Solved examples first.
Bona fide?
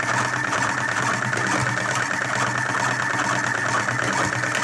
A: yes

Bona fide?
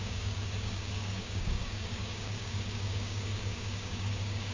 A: no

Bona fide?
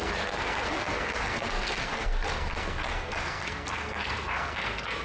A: no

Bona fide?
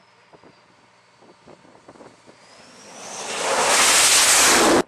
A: yes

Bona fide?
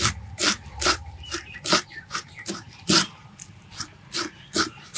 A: no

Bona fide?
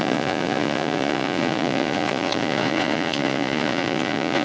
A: no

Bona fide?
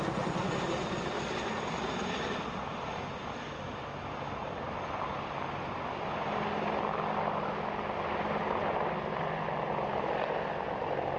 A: yes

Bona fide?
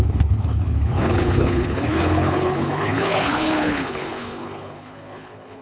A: no